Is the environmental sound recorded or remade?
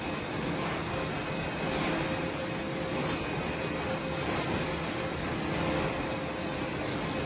recorded